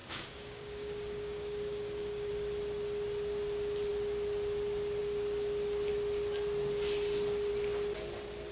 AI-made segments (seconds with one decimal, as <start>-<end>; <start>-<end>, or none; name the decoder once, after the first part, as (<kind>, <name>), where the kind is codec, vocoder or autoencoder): 0.0-2.3 (codec, DAC)